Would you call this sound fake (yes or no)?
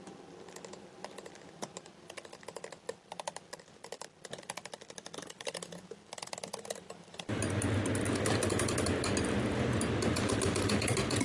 no